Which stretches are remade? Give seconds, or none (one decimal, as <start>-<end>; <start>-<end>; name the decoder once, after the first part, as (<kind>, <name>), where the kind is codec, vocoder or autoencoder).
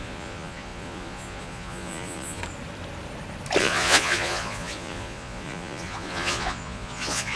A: 0.0-2.4 (vocoder, Vocos); 3.6-7.4